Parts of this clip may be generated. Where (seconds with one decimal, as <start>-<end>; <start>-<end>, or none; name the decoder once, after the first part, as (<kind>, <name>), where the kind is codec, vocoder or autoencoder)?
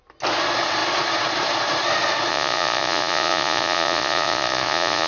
2.3-5.1 (vocoder, Vocos)